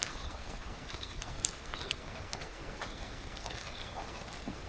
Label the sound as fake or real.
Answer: fake